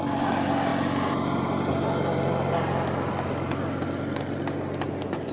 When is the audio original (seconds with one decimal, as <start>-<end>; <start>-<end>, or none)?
0.0-5.3